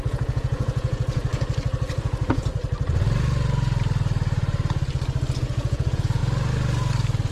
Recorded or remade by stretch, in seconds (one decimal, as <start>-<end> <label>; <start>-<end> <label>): 0.0-1.3 remade; 1.3-2.0 recorded; 2.0-2.5 remade; 2.5-5.4 recorded; 5.4-6.2 remade; 6.2-7.3 recorded